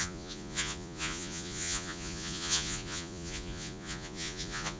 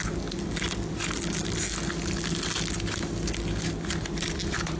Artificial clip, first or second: first